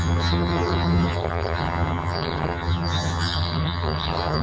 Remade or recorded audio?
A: remade